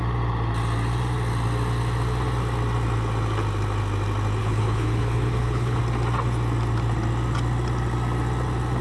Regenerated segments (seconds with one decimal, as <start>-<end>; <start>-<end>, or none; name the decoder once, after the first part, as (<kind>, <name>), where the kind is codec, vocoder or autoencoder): 4.4-5.8 (codec, HILCodec)